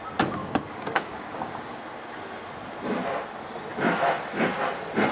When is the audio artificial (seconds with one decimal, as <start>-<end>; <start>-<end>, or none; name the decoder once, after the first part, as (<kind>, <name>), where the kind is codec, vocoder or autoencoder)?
0.4-1.8 (codec, DAC)